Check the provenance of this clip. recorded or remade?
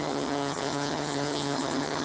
remade